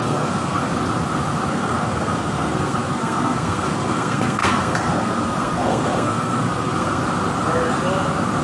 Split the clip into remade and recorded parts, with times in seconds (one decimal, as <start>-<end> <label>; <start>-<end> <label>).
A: 0.0-0.7 remade; 0.7-1.5 recorded; 1.5-7.0 remade; 7.0-8.4 recorded